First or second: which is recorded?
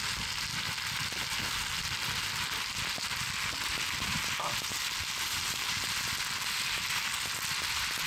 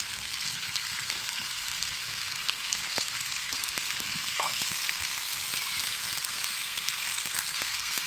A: first